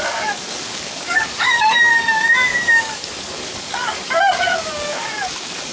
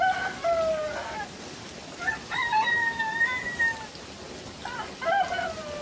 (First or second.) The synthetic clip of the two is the first